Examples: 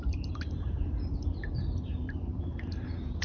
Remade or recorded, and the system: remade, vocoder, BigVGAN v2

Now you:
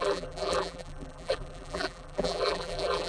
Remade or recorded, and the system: remade, vocoder, BigVGAN v2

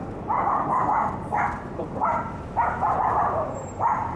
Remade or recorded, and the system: remade, vocoder, BigVGAN v2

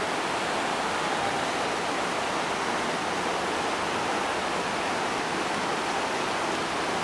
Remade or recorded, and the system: recorded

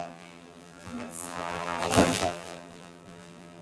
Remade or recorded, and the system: remade, vocoder, BigVGAN v2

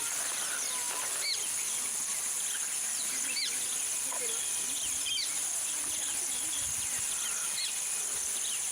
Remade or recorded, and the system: recorded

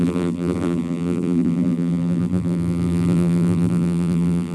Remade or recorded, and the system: remade, vocoder, BigVGAN v2